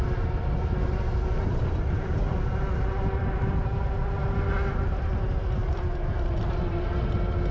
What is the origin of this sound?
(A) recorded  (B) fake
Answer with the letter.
A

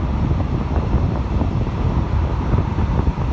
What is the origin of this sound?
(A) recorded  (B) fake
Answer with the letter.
A